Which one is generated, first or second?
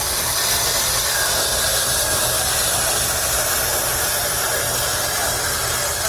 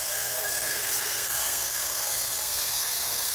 second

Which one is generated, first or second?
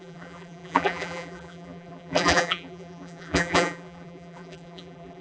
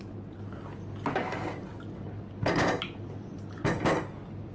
first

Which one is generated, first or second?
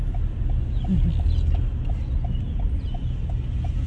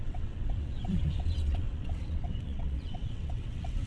second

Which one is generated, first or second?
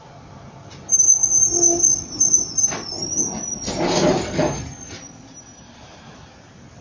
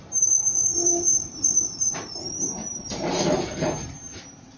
second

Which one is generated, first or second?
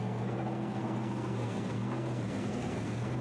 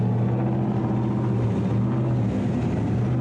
first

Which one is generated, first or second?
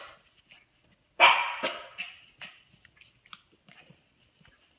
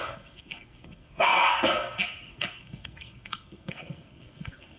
second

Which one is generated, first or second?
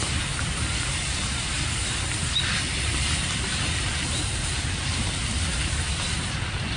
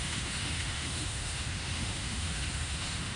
second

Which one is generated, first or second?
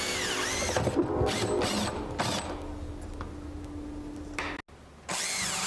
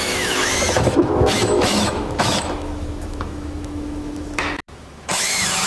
second